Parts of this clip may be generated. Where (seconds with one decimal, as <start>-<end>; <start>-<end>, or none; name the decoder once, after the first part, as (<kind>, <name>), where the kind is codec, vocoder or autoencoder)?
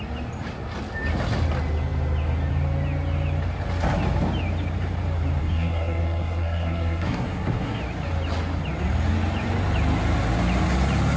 5.4-7.8 (codec, SNAC)